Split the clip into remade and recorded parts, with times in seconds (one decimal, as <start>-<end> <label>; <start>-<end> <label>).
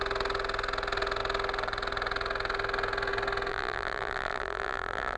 0.0-3.5 recorded; 3.5-5.2 remade